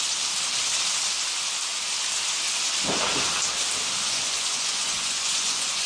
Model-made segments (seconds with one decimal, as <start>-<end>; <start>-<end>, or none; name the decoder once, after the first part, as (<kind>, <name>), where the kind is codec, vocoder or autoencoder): 4.0-5.9 (vocoder, Vocos)